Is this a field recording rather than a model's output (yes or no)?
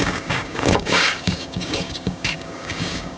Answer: no